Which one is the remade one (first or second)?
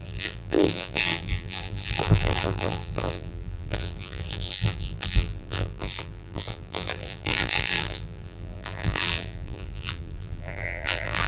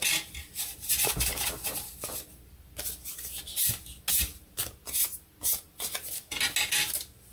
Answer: first